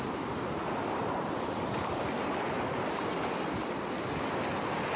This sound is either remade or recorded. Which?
recorded